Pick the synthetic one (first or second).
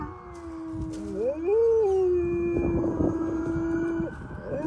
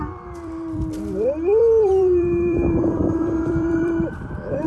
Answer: second